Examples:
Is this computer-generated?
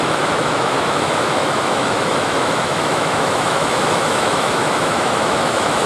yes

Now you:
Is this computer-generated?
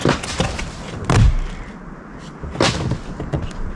no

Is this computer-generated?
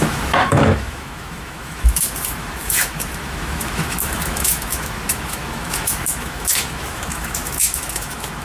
yes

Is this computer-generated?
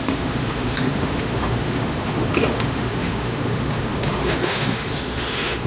yes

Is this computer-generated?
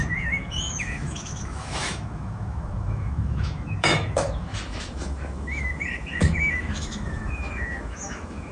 yes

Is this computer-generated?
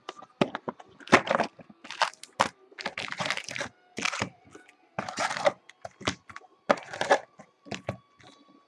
no